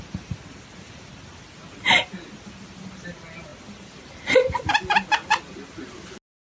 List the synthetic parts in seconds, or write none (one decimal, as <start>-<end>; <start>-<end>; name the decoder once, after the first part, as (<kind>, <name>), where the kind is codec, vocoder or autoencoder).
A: none